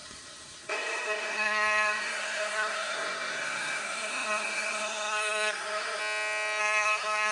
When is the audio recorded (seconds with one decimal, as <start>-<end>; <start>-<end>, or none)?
6.0-6.6